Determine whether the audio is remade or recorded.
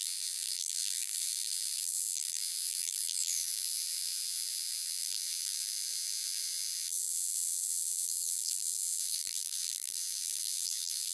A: remade